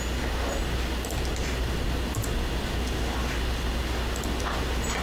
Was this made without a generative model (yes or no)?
yes